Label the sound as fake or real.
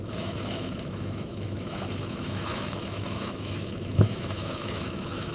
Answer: fake